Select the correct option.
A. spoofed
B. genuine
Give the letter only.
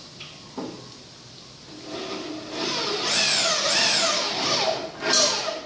B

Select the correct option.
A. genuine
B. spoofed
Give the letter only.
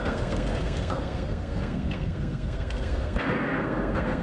B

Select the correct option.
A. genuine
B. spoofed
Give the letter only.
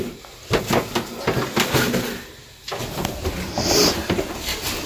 A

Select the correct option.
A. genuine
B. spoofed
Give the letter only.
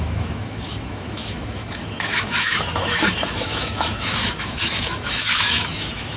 B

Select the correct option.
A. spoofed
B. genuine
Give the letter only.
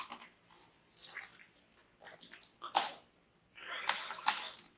B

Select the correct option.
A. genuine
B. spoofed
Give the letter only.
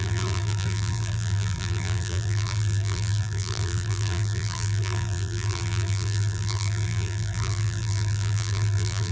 B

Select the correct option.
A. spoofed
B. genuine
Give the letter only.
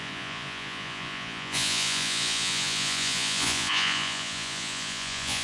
A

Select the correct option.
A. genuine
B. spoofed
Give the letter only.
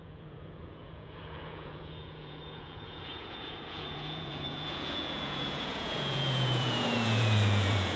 B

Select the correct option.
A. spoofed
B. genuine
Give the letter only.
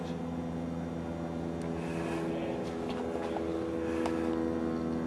B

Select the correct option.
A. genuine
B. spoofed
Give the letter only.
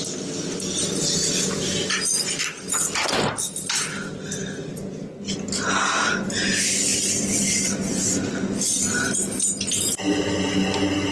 A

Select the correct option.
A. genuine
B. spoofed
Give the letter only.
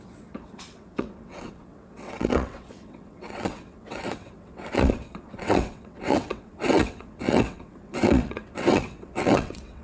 B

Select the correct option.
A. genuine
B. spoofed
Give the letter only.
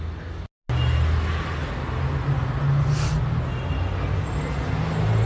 A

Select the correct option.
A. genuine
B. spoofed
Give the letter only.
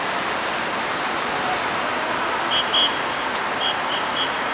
A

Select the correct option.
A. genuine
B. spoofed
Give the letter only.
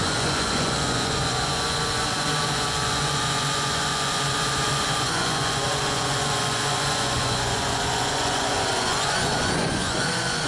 B